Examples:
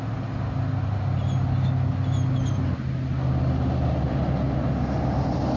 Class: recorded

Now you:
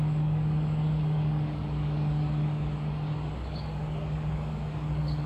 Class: remade